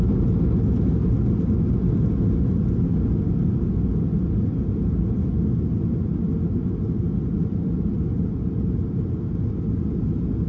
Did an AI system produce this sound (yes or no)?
no